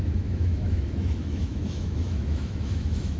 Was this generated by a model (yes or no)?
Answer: yes